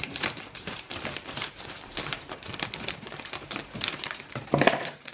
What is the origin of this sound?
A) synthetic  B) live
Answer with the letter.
A